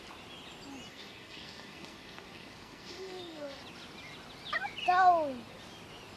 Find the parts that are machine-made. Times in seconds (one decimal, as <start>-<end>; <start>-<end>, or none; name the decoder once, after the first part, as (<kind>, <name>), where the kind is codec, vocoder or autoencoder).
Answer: 0.9-3.6 (codec, SNAC)